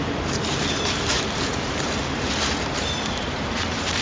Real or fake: fake